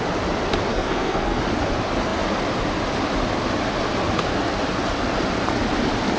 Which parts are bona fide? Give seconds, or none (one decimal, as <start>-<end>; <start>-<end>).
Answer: 0.0-0.7; 1.4-6.2